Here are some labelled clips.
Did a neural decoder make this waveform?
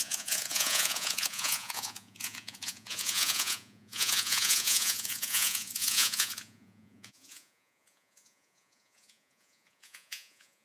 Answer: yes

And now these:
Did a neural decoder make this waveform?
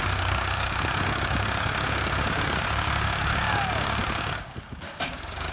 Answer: yes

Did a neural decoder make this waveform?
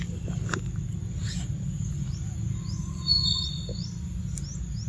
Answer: no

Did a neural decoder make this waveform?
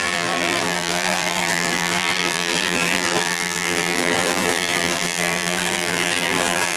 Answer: yes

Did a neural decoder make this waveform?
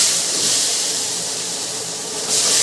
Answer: yes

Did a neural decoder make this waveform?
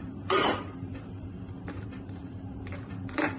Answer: yes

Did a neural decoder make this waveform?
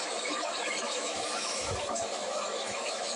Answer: yes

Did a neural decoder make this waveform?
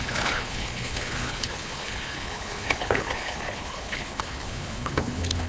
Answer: yes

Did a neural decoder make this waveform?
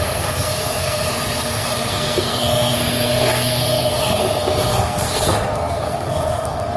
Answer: yes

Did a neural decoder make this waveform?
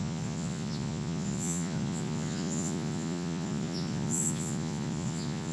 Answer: yes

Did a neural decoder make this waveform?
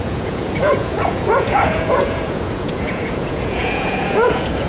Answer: yes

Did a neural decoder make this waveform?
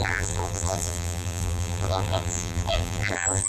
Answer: yes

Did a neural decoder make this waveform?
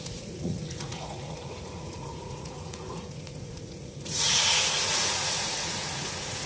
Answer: yes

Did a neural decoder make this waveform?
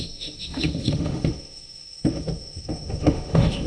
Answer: yes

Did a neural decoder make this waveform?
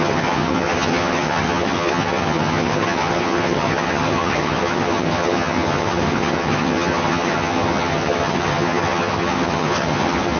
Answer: yes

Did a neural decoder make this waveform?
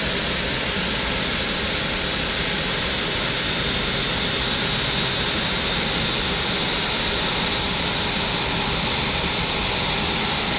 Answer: no